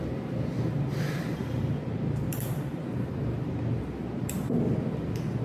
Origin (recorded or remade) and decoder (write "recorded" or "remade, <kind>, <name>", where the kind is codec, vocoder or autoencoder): remade, vocoder, BigVGAN v2